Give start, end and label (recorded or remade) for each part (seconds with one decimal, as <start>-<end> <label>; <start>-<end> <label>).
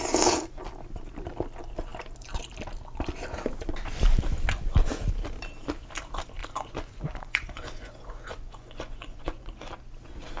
0.0-6.4 recorded; 6.4-9.7 remade; 9.7-10.4 recorded